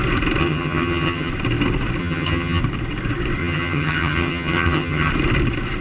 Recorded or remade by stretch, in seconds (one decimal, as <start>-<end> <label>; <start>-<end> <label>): 0.0-0.4 recorded; 0.4-1.3 remade; 1.3-2.0 recorded; 2.0-2.6 remade; 2.6-3.4 recorded; 3.4-5.1 remade; 5.1-5.8 recorded